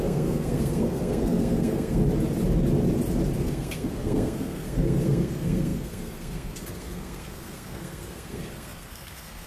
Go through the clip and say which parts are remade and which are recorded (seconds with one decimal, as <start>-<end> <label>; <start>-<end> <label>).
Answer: 0.0-2.0 remade; 2.0-3.4 recorded; 3.4-9.5 remade